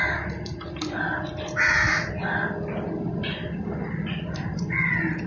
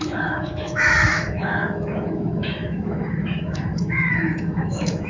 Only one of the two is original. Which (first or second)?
first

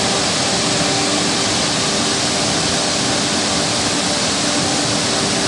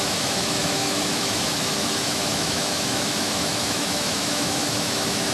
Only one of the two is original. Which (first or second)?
first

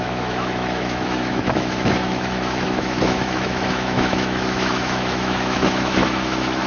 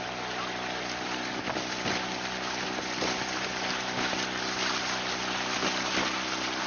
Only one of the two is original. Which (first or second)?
second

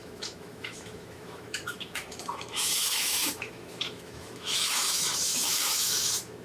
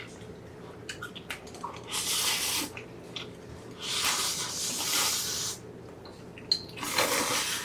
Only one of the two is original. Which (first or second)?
second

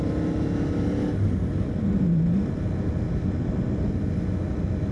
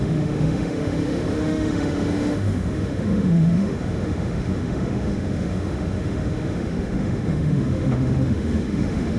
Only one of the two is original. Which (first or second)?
first